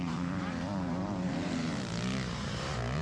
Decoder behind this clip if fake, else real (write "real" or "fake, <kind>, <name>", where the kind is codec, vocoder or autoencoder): fake, vocoder, BigVGAN v2